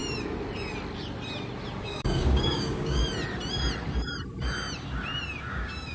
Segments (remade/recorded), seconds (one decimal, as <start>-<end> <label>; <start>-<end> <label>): 0.0-1.8 recorded; 1.8-3.0 remade; 3.0-5.5 recorded; 5.5-5.9 remade